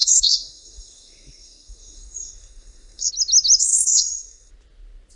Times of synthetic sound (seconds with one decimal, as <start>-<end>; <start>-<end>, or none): 0.0-3.1; 3.6-4.5